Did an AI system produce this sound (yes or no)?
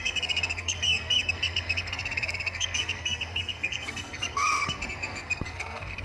yes